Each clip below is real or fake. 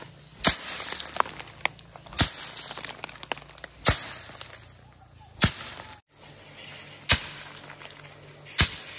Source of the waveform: real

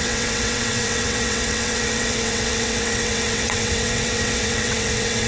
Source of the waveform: fake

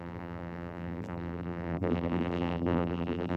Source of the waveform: fake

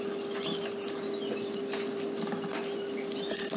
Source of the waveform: real